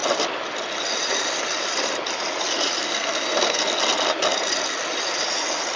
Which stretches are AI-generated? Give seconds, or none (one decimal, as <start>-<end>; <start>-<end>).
2.9-3.6